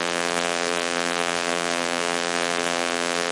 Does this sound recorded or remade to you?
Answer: remade